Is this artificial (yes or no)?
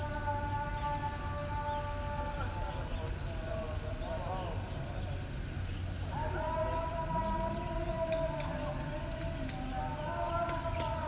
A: no